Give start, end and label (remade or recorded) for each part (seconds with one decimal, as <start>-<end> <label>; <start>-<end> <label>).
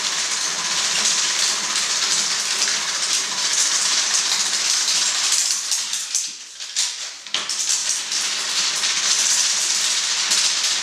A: 0.0-3.5 remade; 3.5-7.1 recorded; 7.1-7.8 remade; 7.8-8.7 recorded; 8.7-10.8 remade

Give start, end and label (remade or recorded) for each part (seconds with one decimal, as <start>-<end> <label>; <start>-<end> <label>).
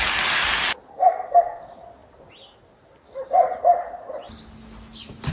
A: 0.0-0.9 recorded; 0.9-1.6 remade; 1.6-5.3 recorded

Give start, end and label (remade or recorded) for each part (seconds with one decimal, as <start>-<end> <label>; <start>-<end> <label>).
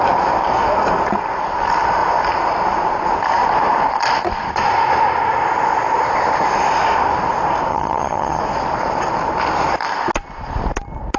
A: 0.0-7.7 recorded; 7.7-8.4 remade; 8.4-11.2 recorded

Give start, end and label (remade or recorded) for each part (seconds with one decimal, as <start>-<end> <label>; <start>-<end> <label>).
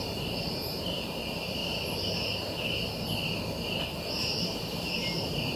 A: 0.0-1.6 remade; 1.6-4.1 recorded; 4.1-5.6 remade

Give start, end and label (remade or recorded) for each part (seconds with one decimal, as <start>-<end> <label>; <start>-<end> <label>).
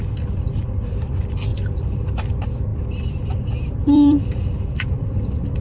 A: 0.0-1.5 remade; 1.5-2.3 recorded; 2.3-2.7 remade; 2.7-3.7 recorded; 3.7-5.6 remade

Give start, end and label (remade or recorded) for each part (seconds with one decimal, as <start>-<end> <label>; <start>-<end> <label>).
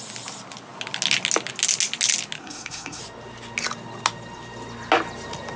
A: 0.0-2.4 recorded; 2.4-3.0 remade; 3.0-5.6 recorded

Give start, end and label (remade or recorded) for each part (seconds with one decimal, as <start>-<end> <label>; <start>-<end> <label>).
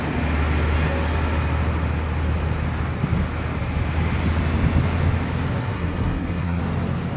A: 0.0-5.6 recorded; 5.6-6.6 remade; 6.6-7.2 recorded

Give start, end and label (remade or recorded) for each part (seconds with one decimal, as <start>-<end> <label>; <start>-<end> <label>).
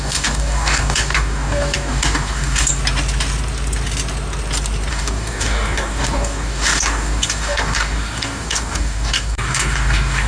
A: 0.0-2.7 remade; 2.7-4.9 recorded; 4.9-10.3 remade